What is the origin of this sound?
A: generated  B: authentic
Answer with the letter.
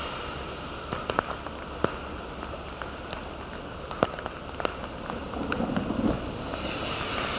B